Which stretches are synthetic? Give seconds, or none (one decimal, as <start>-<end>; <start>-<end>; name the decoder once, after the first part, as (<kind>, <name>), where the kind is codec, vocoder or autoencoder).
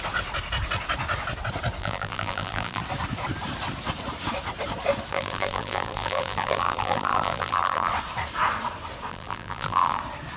1.8-2.8 (vocoder, BigVGAN v2); 5.1-7.9; 9.1-10.0